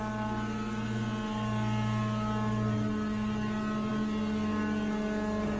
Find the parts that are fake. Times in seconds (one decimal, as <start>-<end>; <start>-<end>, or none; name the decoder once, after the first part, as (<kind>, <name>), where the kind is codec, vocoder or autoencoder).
none